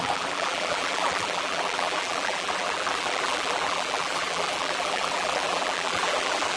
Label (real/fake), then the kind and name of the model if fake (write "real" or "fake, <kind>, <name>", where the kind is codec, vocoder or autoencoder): fake, vocoder, BigVGAN v2